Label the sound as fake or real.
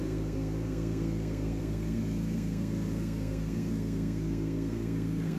fake